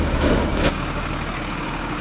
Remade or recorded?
remade